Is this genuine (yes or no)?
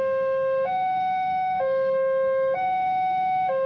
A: no